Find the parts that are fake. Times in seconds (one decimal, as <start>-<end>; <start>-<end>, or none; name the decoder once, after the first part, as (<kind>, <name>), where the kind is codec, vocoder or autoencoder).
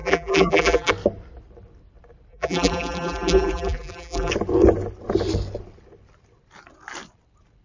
0.0-0.9 (vocoder, BigVGAN v2); 2.3-4.3